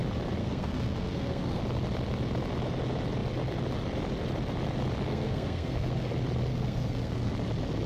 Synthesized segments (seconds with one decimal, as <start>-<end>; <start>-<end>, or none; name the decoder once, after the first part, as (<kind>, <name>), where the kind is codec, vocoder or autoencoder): 0.4-1.6 (codec, SNAC); 5.1-6.1; 6.5-7.3